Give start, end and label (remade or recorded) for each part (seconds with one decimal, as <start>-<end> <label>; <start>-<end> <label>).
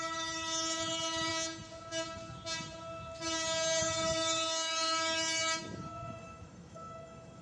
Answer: 0.0-1.3 remade; 1.3-3.8 recorded; 3.8-7.4 remade